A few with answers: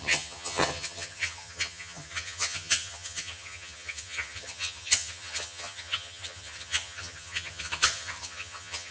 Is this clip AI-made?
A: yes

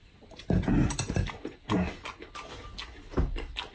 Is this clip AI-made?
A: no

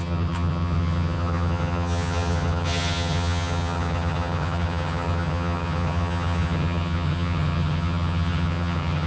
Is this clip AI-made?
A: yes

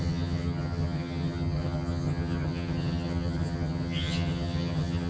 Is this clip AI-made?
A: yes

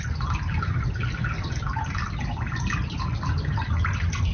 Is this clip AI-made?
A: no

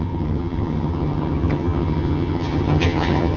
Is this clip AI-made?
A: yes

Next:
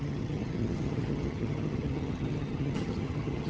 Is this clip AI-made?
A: yes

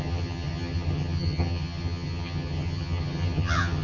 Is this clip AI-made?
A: yes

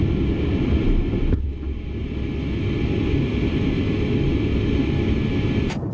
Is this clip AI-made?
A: no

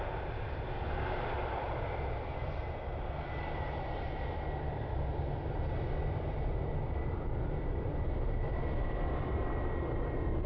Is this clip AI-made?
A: no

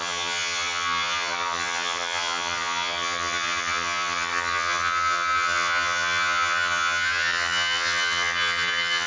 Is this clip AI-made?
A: yes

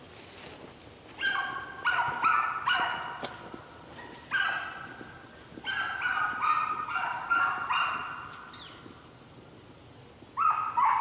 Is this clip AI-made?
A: no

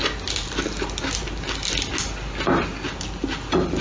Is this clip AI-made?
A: no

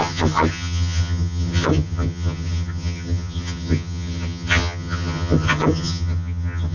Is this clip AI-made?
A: yes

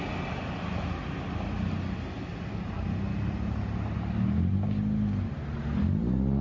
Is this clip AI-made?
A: no